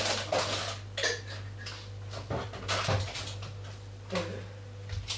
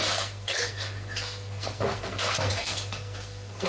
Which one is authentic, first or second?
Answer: first